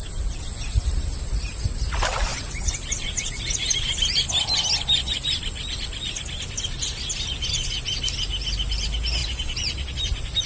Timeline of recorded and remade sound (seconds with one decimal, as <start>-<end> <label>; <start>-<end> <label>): 0.0-2.3 recorded; 2.3-3.9 remade; 3.9-9.2 recorded; 9.2-10.5 remade

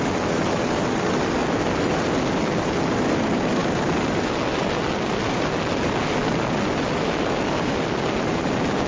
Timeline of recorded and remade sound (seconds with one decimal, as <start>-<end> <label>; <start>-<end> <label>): 0.0-8.9 recorded

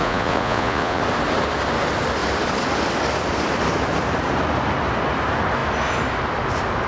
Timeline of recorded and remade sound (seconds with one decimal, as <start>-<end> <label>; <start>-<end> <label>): 0.0-1.0 remade; 1.0-6.9 recorded

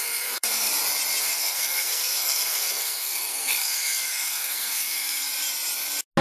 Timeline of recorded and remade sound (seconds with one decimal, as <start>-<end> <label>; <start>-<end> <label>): 0.0-0.7 remade; 0.7-1.2 recorded; 1.2-5.3 remade; 5.3-6.2 recorded

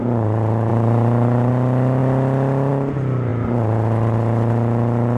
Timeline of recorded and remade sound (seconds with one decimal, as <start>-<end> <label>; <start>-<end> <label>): 0.0-0.7 recorded; 0.7-1.5 remade; 1.5-5.2 recorded